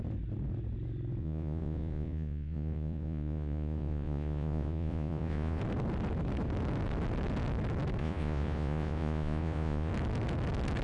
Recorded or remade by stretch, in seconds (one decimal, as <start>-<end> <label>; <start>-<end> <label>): 0.0-1.2 recorded; 1.2-5.6 remade; 5.6-8.0 recorded; 8.0-9.9 remade; 9.9-10.8 recorded

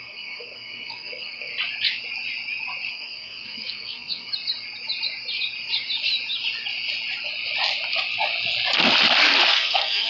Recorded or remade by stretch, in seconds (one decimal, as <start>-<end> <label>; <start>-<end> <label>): 0.0-1.5 remade; 1.5-2.9 recorded; 2.9-4.3 remade; 4.3-9.5 recorded; 9.5-10.1 remade

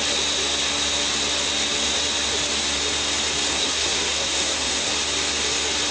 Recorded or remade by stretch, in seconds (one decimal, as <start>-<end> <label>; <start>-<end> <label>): 0.0-3.5 recorded; 3.5-4.9 remade; 4.9-5.9 recorded